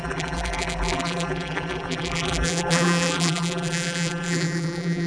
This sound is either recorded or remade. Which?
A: remade